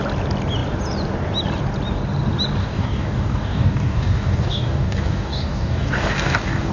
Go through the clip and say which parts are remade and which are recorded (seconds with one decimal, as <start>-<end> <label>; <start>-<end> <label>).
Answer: 0.0-2.6 recorded; 2.6-6.7 remade